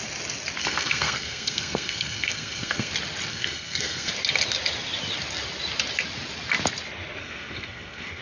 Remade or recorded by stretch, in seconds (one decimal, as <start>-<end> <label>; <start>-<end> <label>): 0.0-0.6 recorded; 0.6-2.9 remade; 2.9-3.3 recorded; 3.3-4.1 remade; 4.1-7.2 recorded; 7.2-8.2 remade